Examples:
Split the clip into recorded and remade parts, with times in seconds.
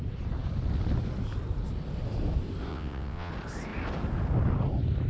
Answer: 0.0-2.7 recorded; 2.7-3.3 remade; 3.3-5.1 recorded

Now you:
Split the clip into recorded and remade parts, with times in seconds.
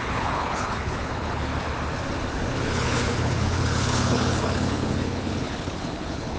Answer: 0.0-1.5 remade; 1.5-2.5 recorded; 2.5-6.4 remade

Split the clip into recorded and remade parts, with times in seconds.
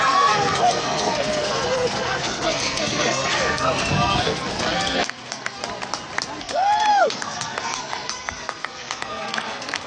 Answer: 0.0-5.6 remade; 5.6-6.4 recorded; 6.4-9.9 remade